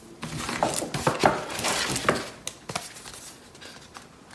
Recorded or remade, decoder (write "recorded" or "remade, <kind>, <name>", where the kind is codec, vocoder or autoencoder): recorded